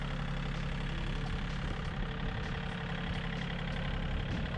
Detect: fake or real real